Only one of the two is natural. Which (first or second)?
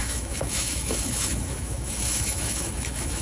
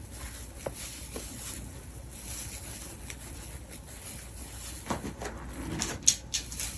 second